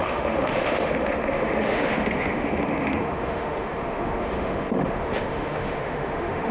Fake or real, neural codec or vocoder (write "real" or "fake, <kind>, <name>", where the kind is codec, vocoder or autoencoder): fake, autoencoder, DAC-VAE